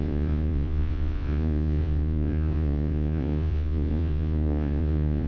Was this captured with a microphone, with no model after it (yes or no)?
no